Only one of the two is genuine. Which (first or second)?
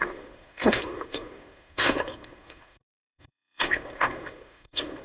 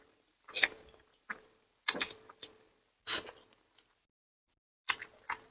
second